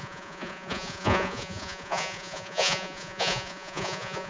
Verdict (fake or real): fake